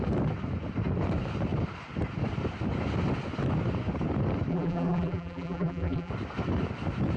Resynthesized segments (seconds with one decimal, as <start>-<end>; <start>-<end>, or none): 4.5-6.1